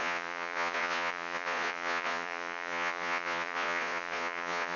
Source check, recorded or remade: remade